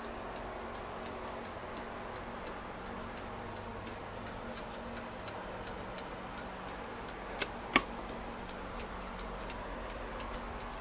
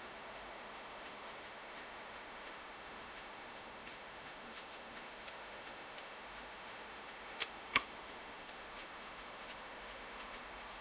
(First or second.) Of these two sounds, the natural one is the first